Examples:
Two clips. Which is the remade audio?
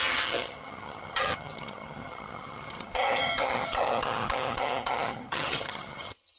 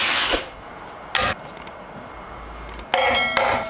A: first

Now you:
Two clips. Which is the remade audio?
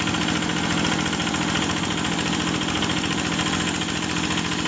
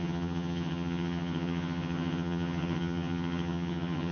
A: second